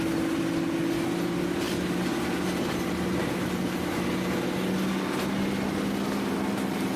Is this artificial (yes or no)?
no